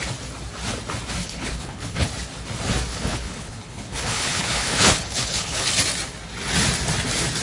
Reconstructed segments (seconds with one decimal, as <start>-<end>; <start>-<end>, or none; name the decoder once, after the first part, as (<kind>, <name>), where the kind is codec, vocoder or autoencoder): 1.2-2.1 (codec, HILCodec); 2.9-5.7